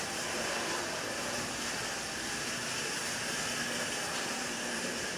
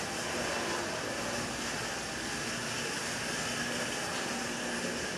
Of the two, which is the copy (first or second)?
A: first